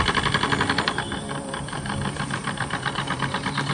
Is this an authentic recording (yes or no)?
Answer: no